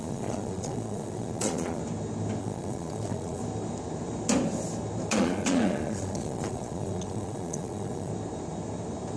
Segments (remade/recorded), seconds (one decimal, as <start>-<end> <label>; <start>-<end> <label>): 0.0-1.8 remade; 1.8-2.4 recorded; 2.4-3.4 remade; 3.4-5.1 recorded; 5.1-8.1 remade; 8.1-9.2 recorded